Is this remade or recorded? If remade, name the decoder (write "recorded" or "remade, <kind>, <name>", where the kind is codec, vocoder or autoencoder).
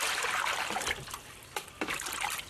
remade, vocoder, BigVGAN v2